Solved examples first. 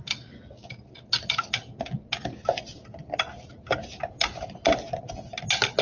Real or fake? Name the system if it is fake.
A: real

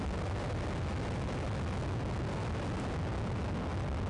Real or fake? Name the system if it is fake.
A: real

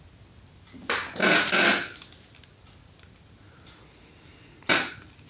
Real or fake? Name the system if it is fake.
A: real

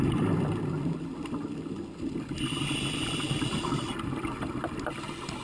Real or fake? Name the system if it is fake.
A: real